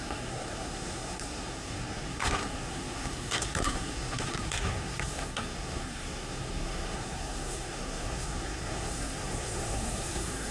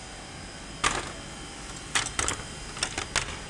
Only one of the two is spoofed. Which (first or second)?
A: first